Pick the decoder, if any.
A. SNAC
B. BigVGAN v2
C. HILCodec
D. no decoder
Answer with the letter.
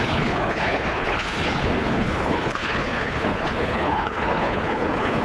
C